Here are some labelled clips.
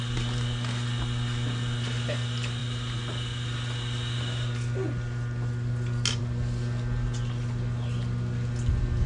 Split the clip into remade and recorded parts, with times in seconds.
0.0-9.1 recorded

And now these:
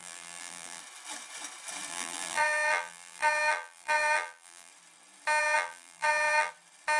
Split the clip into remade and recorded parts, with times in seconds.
0.0-0.8 remade; 0.8-1.9 recorded; 1.9-4.7 remade; 4.7-5.4 recorded; 5.4-6.5 remade; 6.5-7.0 recorded

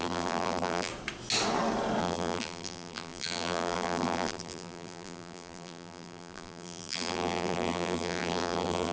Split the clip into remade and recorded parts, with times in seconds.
0.0-0.9 remade; 0.9-2.0 recorded; 2.0-8.9 remade

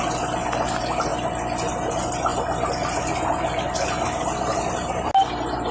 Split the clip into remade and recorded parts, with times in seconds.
0.0-5.7 recorded

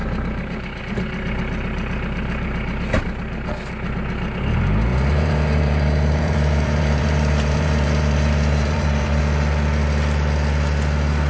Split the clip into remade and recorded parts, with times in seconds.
0.0-0.8 remade; 0.8-4.9 recorded; 4.9-9.2 remade; 9.2-11.3 recorded

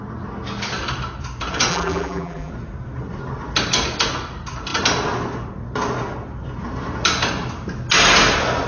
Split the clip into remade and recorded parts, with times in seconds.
0.0-1.7 recorded; 1.7-2.5 remade; 2.5-8.7 recorded